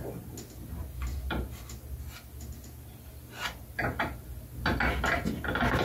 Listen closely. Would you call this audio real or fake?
real